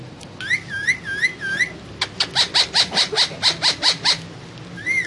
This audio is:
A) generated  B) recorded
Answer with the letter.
B